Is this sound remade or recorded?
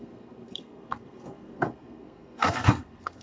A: remade